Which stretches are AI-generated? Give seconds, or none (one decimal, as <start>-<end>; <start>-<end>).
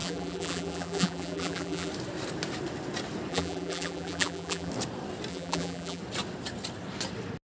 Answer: 0.0-1.9; 3.3-4.7; 5.3-6.0